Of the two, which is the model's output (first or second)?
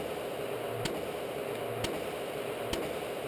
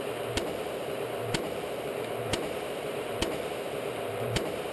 second